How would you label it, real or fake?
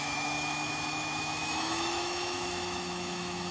fake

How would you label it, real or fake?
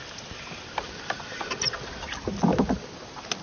real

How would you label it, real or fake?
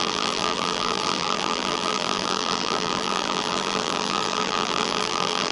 fake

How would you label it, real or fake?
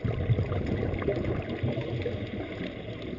real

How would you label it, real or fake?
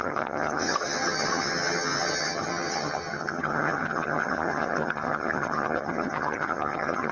fake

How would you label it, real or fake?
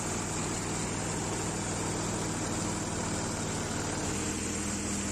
real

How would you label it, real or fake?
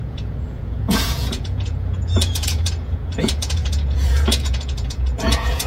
fake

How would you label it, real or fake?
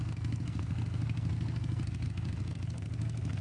fake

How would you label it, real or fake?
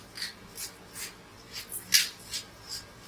real